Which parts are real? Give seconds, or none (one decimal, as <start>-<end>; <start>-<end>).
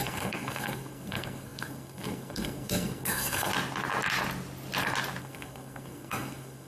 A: 3.5-5.2